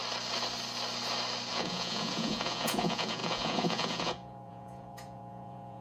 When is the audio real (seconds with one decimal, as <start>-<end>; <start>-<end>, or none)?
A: 0.0-1.5